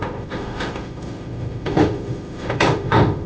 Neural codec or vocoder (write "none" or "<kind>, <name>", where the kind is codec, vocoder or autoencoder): autoencoder, DAC-VAE